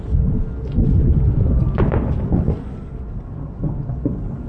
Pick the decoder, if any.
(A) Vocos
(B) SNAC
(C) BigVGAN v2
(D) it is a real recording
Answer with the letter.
D